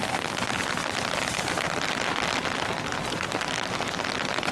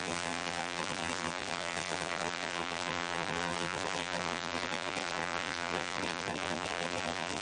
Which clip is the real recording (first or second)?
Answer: first